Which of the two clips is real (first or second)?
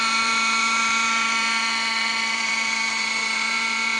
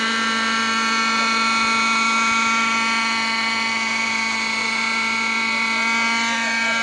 second